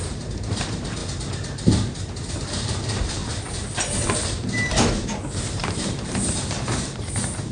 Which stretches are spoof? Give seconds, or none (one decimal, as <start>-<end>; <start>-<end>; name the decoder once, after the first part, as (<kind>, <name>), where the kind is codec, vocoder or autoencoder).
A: 0.0-1.0 (vocoder, BigVGAN v2); 2.3-3.2; 4.1-7.5